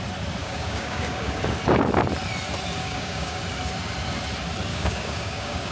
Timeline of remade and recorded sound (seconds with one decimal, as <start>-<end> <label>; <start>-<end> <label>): 0.0-0.4 recorded; 0.4-1.4 remade; 1.4-2.8 recorded; 2.8-3.4 remade; 3.4-4.7 recorded; 4.7-5.7 remade